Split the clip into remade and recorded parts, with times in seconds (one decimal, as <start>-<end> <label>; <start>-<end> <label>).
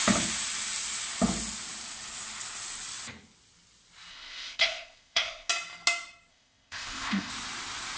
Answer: 0.0-4.1 recorded; 4.1-5.5 remade; 5.5-6.3 recorded; 6.3-7.3 remade; 7.3-8.0 recorded